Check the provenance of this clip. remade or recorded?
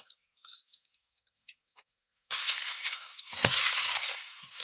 remade